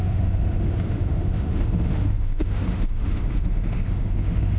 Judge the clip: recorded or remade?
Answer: remade